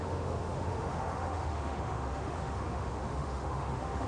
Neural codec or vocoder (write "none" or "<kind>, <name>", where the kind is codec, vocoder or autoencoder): autoencoder, DAC-VAE